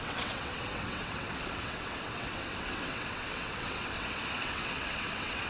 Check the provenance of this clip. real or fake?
fake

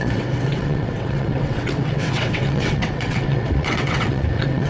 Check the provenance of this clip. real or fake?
fake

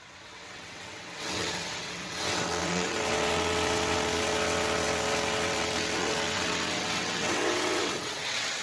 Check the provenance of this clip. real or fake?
fake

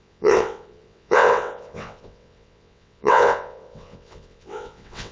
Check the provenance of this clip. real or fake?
fake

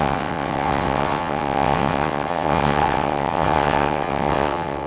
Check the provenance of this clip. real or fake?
fake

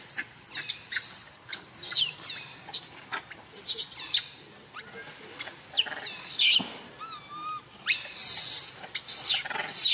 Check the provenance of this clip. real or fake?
real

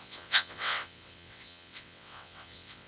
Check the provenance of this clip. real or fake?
fake